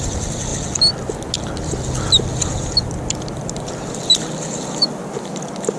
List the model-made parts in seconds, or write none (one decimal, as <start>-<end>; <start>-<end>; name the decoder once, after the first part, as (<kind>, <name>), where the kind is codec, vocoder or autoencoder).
none